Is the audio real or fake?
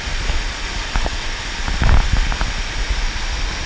real